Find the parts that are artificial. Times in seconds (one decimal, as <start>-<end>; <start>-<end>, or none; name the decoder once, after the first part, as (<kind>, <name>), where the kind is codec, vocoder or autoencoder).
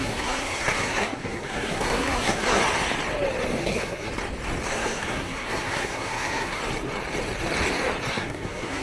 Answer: 0.0-2.6 (codec, SNAC); 3.6-4.1; 4.7-6.6; 8.1-8.8